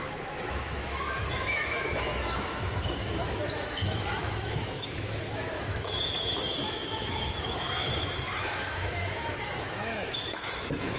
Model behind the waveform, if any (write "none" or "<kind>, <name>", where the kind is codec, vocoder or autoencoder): autoencoder, DAC-VAE